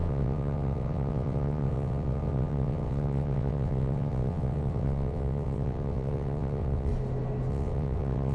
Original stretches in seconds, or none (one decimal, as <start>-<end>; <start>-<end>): 6.9-7.5